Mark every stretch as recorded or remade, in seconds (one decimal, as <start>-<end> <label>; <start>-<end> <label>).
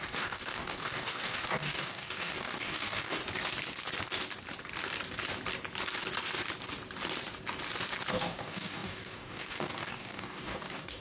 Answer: 0.0-3.2 remade; 3.2-8.1 recorded; 8.1-11.0 remade